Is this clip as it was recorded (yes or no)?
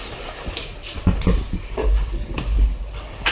yes